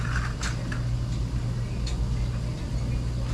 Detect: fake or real real